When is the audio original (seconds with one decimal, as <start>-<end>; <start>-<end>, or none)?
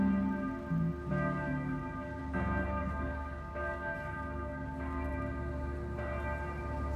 0.0-1.1; 2.2-2.8; 5.1-7.0